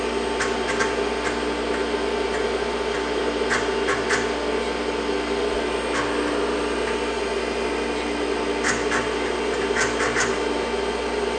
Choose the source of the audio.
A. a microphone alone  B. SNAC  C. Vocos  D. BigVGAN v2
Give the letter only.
A